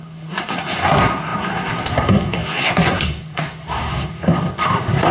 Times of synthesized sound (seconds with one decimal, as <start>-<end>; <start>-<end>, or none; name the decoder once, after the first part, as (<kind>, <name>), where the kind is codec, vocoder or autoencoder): 0.0-5.1 (codec, SNAC)